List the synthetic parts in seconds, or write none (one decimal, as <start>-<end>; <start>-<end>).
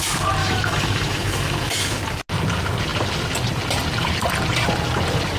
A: 0.4-2.0